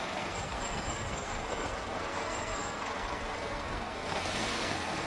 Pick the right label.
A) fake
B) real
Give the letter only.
A